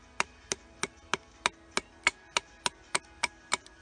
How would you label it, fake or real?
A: real